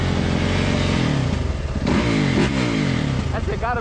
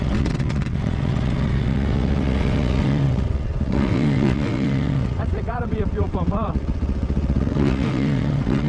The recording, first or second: first